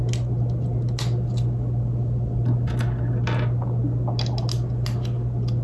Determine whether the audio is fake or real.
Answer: real